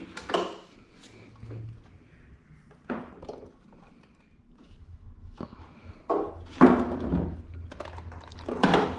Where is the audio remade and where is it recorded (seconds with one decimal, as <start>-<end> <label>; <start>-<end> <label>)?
0.0-4.8 recorded; 4.8-5.9 remade; 5.9-9.0 recorded